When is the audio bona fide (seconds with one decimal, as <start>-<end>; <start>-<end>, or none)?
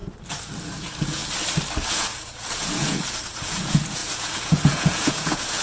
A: 0.0-0.7; 1.2-1.9